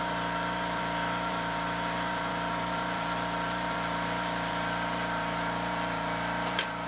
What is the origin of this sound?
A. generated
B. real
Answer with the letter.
A